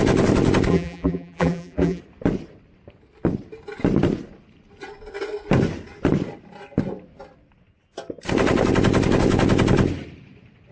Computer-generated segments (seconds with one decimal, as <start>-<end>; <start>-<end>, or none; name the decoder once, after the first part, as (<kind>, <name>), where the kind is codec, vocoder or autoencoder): 0.7-2.0 (vocoder, BigVGAN v2)